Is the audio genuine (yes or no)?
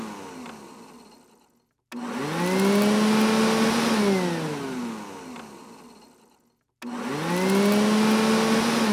yes